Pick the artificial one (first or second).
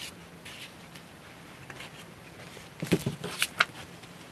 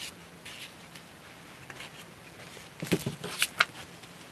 first